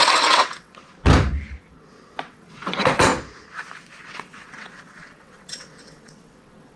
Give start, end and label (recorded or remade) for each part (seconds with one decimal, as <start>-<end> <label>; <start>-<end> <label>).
0.0-0.8 remade; 0.8-1.6 recorded; 1.6-3.1 remade; 3.1-4.0 recorded; 4.0-6.8 remade